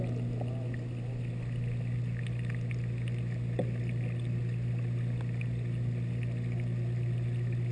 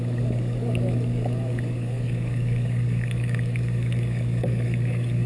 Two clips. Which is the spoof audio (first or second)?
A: second